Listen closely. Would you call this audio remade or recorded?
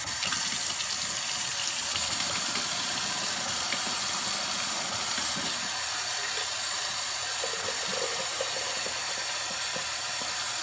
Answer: recorded